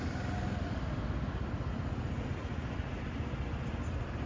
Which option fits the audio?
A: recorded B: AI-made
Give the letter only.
A